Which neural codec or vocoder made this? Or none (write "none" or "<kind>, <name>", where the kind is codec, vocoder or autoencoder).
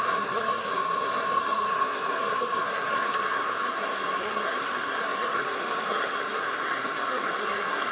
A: codec, SNAC